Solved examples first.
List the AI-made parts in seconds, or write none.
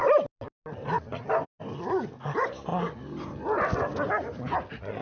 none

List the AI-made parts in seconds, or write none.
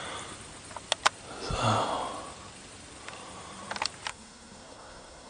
4.1-5.3